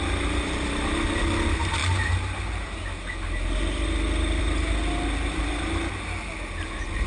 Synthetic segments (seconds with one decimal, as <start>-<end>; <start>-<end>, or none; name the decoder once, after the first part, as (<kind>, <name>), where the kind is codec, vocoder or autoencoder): none